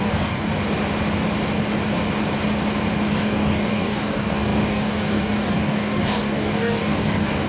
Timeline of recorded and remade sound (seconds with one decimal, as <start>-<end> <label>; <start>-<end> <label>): 0.0-0.5 remade; 0.5-3.1 recorded; 3.1-7.5 remade